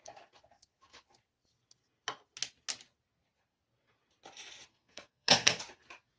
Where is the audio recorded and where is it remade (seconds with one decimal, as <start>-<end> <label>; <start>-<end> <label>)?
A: 0.0-4.7 recorded; 4.7-5.6 remade; 5.6-6.2 recorded